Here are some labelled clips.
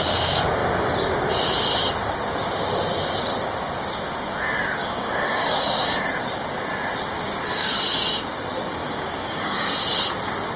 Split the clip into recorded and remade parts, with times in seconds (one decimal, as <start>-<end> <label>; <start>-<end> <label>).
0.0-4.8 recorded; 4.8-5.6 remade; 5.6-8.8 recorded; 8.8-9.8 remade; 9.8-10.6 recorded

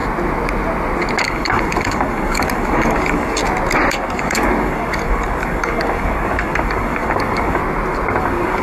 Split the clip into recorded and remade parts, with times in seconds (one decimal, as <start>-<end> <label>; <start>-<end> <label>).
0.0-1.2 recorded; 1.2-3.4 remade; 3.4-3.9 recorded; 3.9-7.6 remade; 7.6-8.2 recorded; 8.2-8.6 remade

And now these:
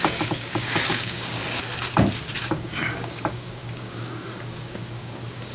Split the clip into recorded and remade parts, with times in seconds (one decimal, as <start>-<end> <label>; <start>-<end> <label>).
0.0-1.4 remade; 1.4-2.4 recorded; 2.4-5.5 remade